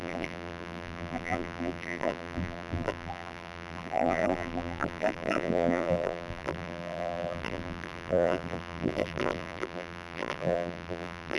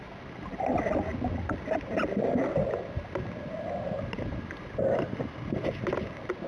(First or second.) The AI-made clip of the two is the first